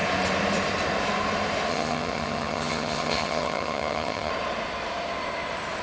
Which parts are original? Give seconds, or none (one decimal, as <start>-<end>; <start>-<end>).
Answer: 0.0-1.7; 4.3-5.8